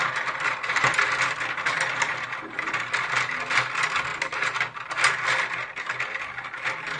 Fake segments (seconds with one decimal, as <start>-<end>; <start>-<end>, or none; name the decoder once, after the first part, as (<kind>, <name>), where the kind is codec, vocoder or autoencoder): none